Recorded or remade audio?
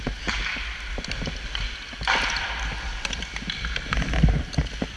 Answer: recorded